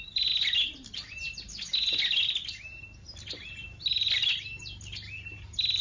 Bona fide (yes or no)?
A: yes